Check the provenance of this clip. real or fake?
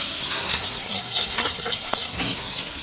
fake